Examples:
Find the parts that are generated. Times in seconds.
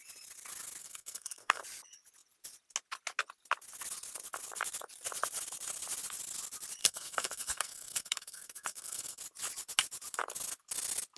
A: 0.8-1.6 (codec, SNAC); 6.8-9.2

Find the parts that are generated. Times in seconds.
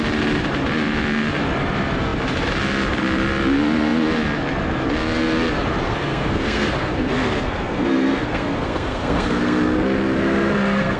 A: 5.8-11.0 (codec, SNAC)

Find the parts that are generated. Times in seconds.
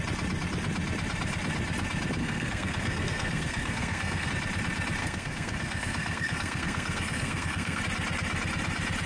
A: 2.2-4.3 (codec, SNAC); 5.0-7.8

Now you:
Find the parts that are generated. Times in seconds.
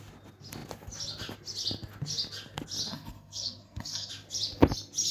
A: 2.9-4.1 (codec, SNAC)